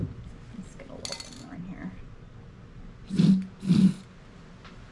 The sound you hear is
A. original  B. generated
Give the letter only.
A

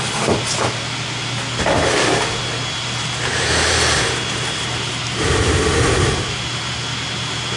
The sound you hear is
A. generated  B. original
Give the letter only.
B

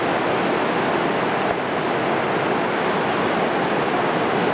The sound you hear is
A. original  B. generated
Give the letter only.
A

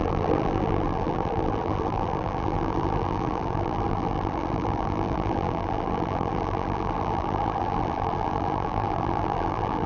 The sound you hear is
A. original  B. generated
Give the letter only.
B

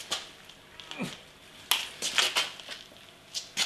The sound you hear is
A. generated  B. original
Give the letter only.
B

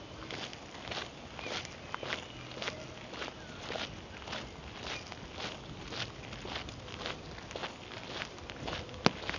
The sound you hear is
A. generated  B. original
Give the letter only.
B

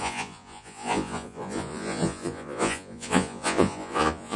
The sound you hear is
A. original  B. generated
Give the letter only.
B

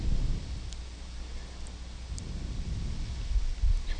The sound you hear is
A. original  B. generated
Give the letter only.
A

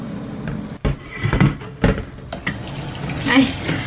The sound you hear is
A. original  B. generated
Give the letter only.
A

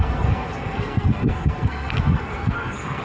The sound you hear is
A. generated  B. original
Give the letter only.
A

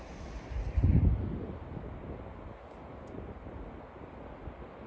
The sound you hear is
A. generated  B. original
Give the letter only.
B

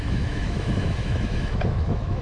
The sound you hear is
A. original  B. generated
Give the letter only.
B